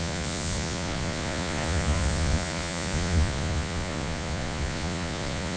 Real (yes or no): no